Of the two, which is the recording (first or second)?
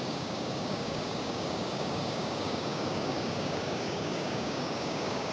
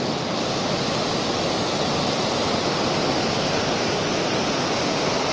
second